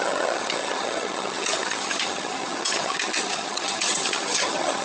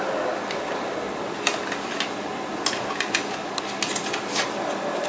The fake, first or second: first